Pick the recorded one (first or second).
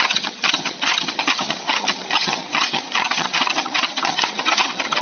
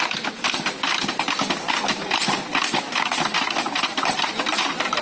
second